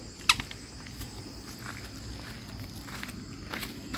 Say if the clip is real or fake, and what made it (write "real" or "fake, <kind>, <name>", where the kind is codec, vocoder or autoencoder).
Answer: real